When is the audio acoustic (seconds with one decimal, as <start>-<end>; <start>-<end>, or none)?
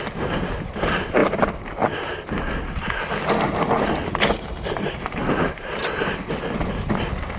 0.0-7.4